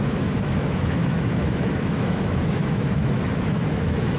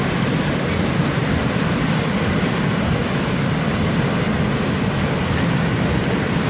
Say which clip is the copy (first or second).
first